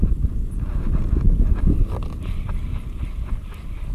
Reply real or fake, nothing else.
real